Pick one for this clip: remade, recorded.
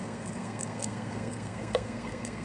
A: remade